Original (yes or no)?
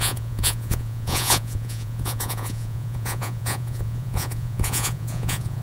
no